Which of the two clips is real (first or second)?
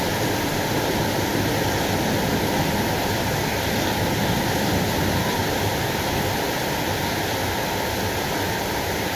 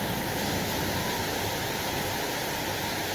second